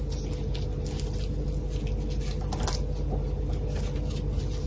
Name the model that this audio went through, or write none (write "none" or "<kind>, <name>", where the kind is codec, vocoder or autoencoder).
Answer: none